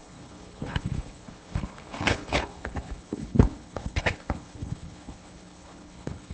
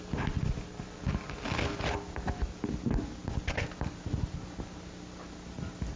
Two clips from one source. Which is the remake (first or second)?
first